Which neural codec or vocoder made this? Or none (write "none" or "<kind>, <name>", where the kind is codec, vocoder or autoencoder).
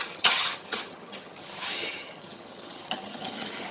vocoder, HiFi-GAN